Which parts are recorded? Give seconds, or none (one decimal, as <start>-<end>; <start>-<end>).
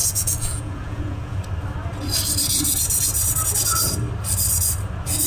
1.4-5.3